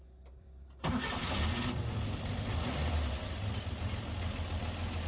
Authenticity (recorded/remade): recorded